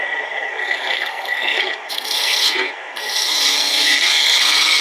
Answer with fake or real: fake